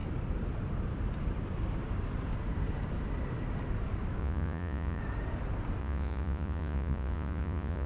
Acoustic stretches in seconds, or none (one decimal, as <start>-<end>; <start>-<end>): 0.0-4.2; 5.0-5.8